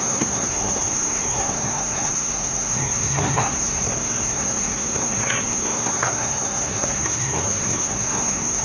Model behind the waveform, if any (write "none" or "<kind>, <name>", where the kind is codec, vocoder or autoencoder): codec, SNAC